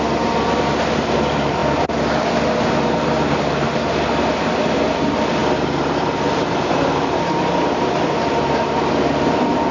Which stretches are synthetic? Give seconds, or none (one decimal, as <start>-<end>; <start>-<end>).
none